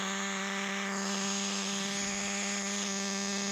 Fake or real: real